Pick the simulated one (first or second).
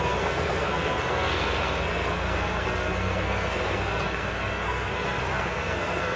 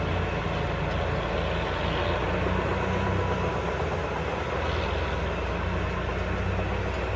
first